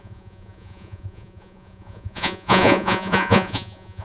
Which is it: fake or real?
fake